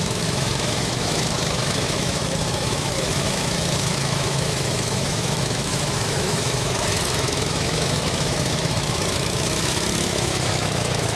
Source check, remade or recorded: remade